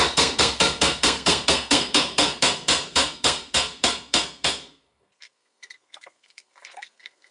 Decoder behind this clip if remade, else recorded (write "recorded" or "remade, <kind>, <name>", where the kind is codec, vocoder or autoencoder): remade, codec, SNAC